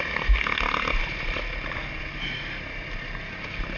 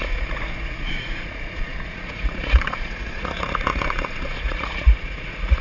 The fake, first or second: second